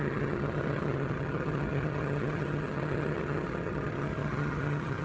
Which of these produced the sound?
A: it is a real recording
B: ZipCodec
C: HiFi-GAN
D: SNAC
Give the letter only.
C